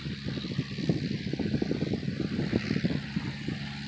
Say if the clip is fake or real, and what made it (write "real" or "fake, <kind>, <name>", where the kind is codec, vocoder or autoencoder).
real